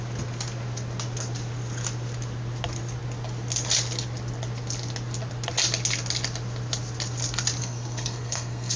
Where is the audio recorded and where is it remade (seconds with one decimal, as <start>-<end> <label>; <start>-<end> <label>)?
0.0-7.6 recorded; 7.6-8.8 remade